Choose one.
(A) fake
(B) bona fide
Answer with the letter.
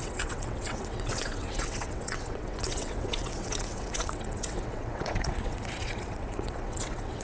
A